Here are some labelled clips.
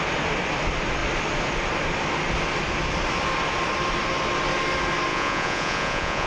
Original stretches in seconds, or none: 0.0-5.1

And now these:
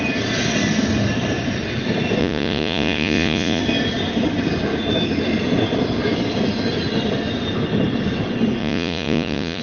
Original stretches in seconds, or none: 0.0-2.2; 3.6-8.6

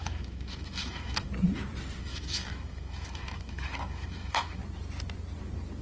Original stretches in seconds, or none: 1.3-2.0; 4.6-5.8

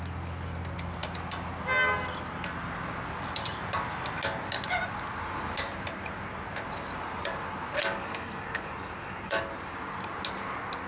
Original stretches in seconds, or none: 0.0-7.8; 9.4-10.9

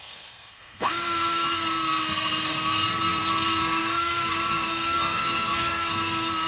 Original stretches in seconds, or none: none